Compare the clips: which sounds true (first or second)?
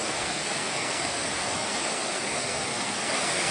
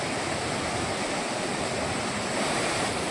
second